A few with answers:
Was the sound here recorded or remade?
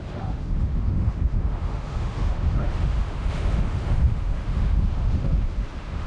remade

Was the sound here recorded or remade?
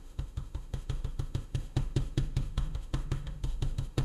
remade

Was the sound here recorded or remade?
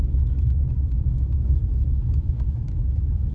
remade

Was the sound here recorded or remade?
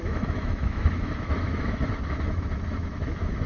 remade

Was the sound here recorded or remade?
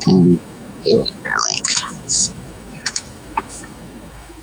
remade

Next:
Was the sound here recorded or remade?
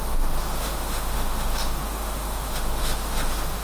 remade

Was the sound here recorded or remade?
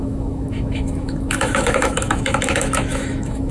remade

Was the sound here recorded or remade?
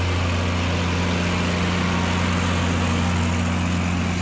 recorded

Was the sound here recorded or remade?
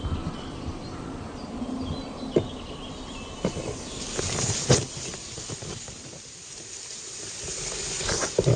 recorded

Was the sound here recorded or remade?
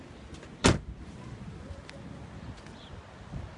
recorded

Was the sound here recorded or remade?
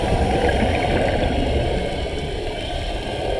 recorded